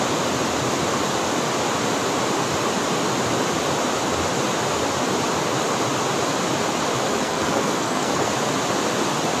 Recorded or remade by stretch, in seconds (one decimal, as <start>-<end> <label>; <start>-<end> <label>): 0.0-7.1 recorded; 7.1-8.3 remade; 8.3-9.4 recorded